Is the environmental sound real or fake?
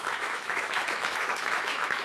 fake